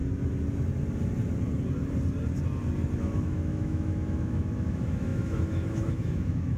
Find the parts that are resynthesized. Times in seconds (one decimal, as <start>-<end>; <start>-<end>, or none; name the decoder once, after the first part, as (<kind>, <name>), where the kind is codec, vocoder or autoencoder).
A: 3.0-6.6 (autoencoder, DAC-VAE)